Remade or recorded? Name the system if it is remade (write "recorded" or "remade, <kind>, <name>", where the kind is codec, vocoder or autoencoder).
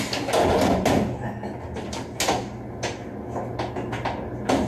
recorded